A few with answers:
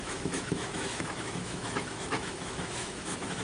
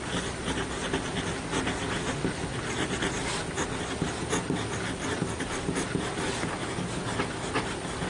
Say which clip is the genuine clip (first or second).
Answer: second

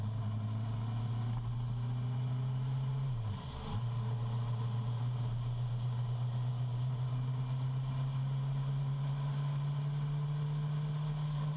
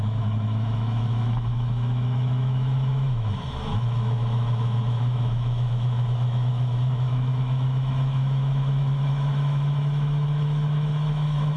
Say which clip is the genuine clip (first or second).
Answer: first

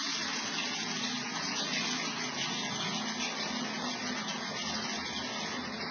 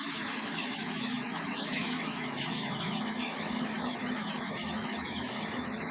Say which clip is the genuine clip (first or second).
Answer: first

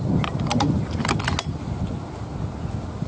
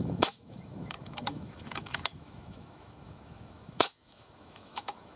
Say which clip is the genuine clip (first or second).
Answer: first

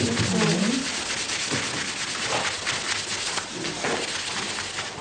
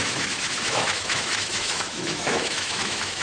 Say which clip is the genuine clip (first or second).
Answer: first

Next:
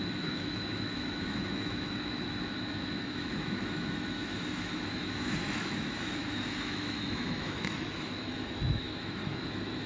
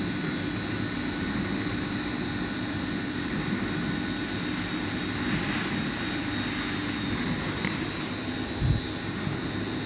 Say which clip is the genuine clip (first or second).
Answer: second